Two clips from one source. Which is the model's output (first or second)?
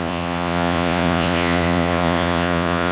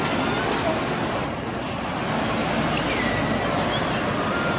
first